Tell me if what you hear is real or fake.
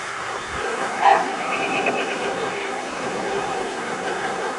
fake